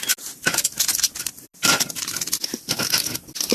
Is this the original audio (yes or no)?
yes